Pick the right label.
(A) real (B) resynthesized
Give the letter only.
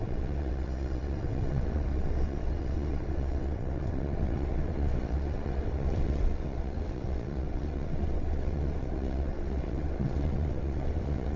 B